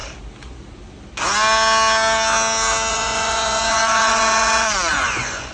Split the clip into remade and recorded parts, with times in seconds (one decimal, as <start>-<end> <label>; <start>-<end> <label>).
0.0-2.9 recorded; 2.9-5.5 remade